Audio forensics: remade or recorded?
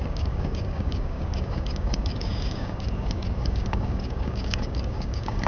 remade